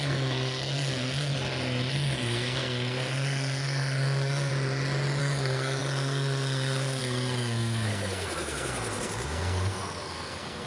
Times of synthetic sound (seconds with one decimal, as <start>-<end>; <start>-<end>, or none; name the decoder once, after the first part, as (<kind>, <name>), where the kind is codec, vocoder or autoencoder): 0.0-1.3 (codec, SNAC); 1.9-4.5; 5.2-10.7